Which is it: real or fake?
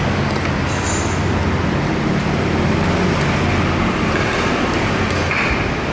real